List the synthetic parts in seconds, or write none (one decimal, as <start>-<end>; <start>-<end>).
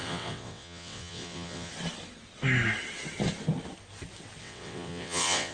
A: 0.0-1.7; 4.4-5.5